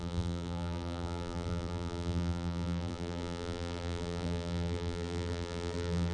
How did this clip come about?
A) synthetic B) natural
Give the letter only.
A